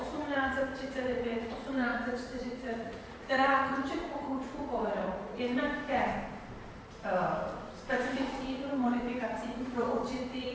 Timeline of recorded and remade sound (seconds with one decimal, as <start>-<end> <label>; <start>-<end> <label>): 0.0-5.6 remade; 5.6-8.1 recorded; 8.1-10.5 remade